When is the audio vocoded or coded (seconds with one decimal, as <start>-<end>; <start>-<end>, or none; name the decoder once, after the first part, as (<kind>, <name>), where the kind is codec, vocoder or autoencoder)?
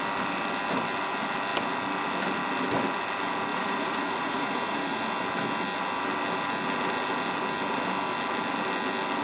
3.5-5.0 (vocoder, Vocos)